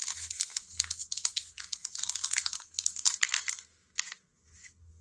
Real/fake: fake